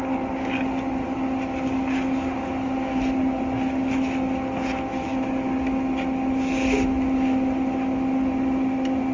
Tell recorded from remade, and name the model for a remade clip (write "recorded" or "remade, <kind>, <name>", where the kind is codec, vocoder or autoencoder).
recorded